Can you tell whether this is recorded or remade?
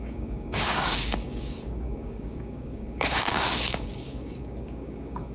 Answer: remade